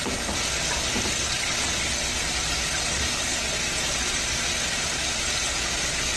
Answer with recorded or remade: recorded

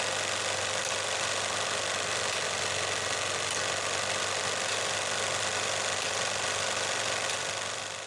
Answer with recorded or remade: recorded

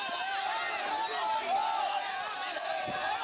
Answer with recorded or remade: recorded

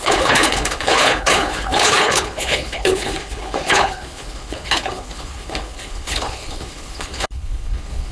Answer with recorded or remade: remade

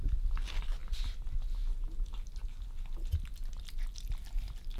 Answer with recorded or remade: recorded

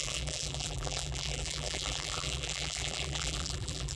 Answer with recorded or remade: remade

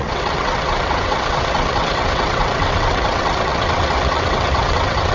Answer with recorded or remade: remade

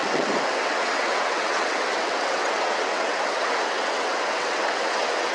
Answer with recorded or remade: remade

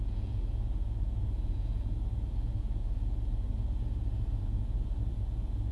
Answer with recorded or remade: remade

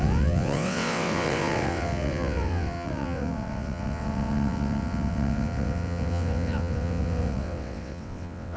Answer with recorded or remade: remade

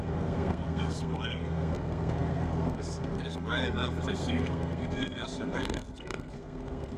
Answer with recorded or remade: remade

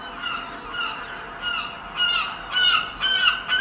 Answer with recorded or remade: recorded